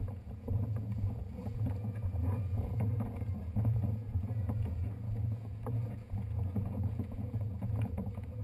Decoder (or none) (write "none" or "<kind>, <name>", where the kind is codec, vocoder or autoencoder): vocoder, Vocos